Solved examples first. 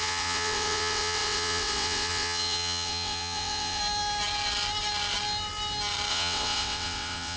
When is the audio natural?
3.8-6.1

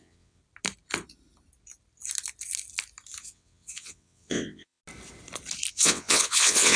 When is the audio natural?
0.4-3.2; 4.8-5.7

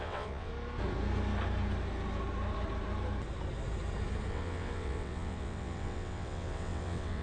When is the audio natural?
0.5-4.3

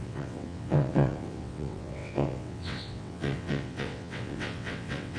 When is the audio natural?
none

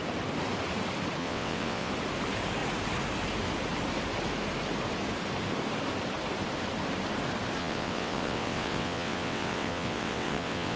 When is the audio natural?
0.0-1.2; 1.9-7.6

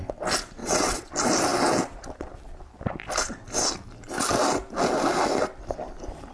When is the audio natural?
0.0-0.6; 1.1-6.3

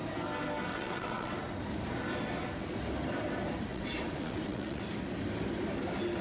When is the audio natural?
0.0-0.7; 1.3-3.7; 4.8-6.2

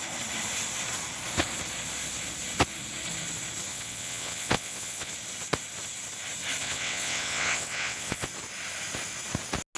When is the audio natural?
0.0-3.7; 5.1-6.6; 8.3-9.8